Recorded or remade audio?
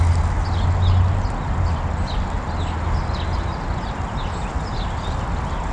recorded